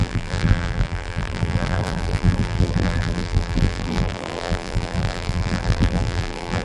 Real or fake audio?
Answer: fake